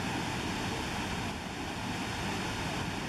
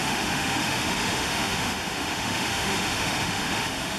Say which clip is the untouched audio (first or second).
first